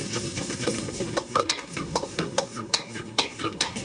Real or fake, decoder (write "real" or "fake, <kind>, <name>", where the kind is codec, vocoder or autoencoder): fake, codec, SNAC